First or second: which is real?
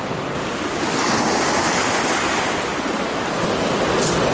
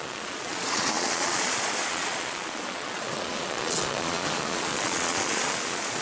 first